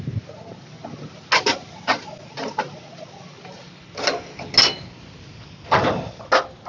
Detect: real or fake real